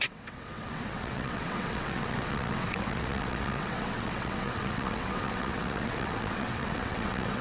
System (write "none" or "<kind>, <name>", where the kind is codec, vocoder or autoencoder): vocoder, WaveNeXt